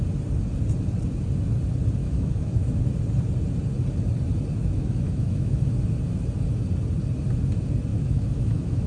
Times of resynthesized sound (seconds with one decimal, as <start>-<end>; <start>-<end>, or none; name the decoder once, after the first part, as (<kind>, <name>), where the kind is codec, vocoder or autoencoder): 2.0-2.8 (autoencoder, DAC-VAE); 4.6-5.7; 7.9-8.9